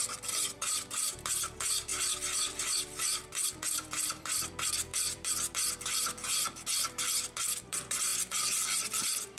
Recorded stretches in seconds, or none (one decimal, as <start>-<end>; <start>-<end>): none